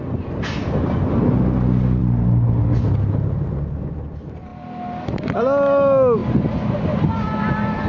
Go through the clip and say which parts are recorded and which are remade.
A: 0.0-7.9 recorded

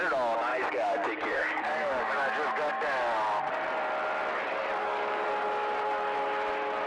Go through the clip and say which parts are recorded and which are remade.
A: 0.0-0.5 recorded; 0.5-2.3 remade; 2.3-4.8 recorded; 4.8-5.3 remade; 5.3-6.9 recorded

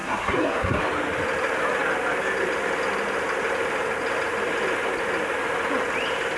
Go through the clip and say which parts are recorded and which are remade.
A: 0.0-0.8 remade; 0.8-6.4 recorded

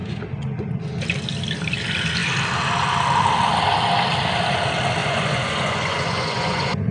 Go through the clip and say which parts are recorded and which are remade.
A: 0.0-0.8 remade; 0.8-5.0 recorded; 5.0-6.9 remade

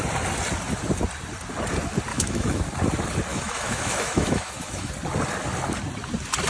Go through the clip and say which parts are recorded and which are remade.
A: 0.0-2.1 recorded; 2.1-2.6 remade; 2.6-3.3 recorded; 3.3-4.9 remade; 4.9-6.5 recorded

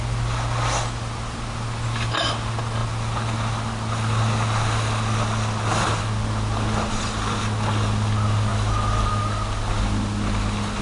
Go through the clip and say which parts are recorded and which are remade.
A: 0.0-10.8 recorded

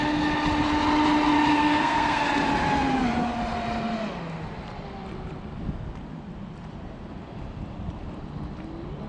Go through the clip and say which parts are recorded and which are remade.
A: 0.0-1.5 recorded; 1.5-2.2 remade; 2.2-9.1 recorded